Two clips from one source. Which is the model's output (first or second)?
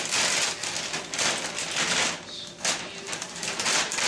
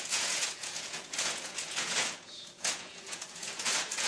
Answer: second